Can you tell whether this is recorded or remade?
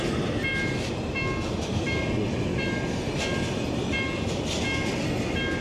recorded